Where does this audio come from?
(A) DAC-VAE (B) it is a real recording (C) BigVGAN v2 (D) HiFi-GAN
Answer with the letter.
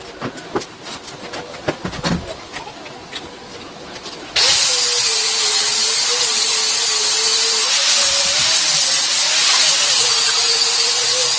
B